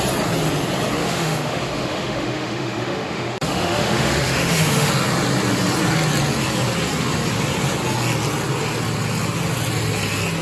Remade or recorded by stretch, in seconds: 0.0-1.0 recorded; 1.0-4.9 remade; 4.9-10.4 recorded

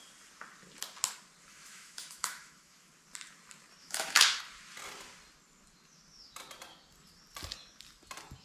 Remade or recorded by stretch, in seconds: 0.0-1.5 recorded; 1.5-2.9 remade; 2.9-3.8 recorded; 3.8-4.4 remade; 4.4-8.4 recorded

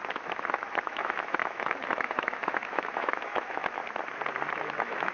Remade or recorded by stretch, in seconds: 0.0-3.8 remade; 3.8-4.5 recorded; 4.5-5.1 remade

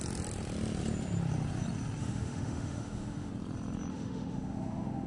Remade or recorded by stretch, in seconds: 0.0-2.0 recorded; 2.0-3.3 remade; 3.3-3.9 recorded; 3.9-5.1 remade

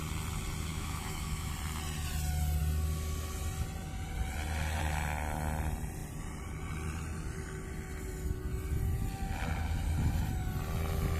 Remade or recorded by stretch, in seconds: 0.0-0.7 recorded; 0.7-1.5 remade; 1.5-11.2 recorded